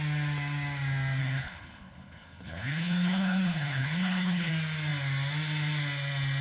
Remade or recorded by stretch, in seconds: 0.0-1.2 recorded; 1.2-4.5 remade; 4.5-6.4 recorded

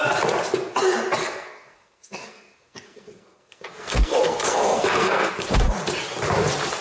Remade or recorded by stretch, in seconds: 0.0-1.2 recorded; 1.2-5.3 remade; 5.3-6.8 recorded

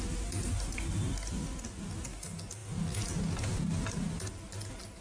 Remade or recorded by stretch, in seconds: 0.0-5.0 recorded

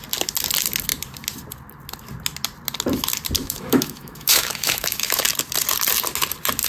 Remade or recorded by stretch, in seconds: 0.0-3.4 recorded; 3.4-5.2 remade; 5.2-6.7 recorded